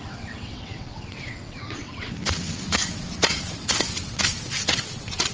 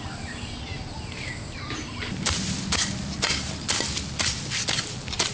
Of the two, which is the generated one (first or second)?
first